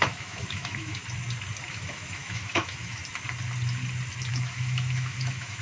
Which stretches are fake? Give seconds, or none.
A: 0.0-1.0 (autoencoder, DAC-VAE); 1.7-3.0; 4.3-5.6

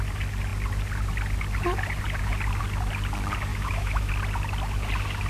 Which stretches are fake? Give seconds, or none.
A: 3.5-4.1 (autoencoder, DAC-VAE)